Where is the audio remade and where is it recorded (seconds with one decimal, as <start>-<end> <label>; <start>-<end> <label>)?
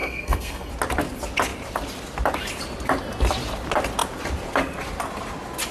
0.0-0.7 remade; 0.7-5.7 recorded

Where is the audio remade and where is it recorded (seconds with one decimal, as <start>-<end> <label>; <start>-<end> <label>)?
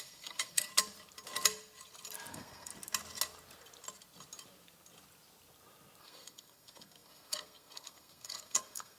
0.0-0.7 remade; 0.7-2.3 recorded; 2.3-2.7 remade; 2.7-6.0 recorded; 6.0-9.0 remade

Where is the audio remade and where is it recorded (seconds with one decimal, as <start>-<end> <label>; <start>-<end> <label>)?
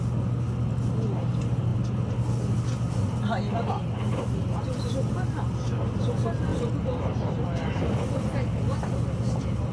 0.0-9.7 recorded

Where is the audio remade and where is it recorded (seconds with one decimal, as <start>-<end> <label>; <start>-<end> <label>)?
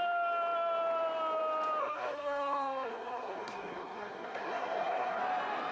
0.0-1.8 recorded; 1.8-5.2 remade; 5.2-5.7 recorded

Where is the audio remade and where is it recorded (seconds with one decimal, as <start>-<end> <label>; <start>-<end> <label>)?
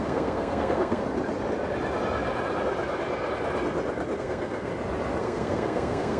0.0-1.0 remade; 1.0-4.2 recorded; 4.2-4.7 remade; 4.7-5.2 recorded; 5.2-6.2 remade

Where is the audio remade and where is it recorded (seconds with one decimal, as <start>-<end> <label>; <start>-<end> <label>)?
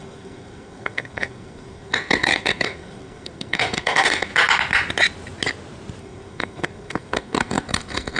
0.0-4.3 remade; 4.3-6.0 recorded; 6.0-8.2 remade